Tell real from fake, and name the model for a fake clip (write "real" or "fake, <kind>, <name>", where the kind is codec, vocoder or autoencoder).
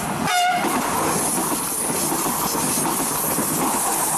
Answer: real